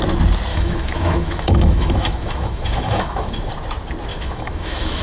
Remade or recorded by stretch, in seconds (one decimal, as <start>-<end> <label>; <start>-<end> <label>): 0.0-0.5 recorded; 0.5-3.5 remade; 3.5-4.1 recorded; 4.1-5.0 remade

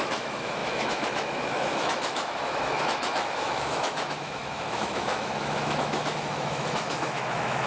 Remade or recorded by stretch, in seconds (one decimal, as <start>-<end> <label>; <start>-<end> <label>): 0.0-7.7 remade

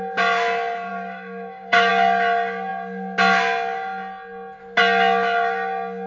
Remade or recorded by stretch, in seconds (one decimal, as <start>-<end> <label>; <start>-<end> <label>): 0.0-0.9 recorded; 0.9-1.9 remade; 1.9-6.1 recorded

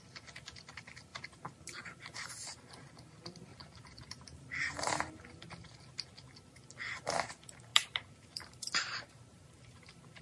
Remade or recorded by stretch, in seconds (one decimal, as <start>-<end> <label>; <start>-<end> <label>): 0.0-3.5 recorded; 3.5-4.7 remade; 4.7-7.7 recorded; 7.7-10.2 remade

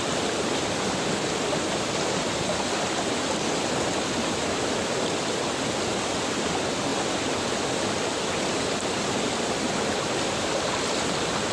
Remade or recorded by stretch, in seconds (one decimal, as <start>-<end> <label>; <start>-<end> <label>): 0.0-11.5 recorded

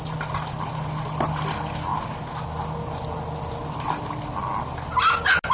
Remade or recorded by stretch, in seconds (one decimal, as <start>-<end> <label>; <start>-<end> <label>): 0.0-5.5 recorded